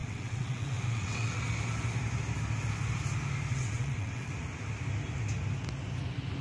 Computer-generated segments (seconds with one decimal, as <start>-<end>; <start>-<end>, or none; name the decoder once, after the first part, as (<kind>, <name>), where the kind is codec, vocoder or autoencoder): 0.0-1.4 (vocoder, WaveNeXt); 3.5-4.3